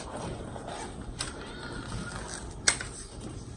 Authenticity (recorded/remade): recorded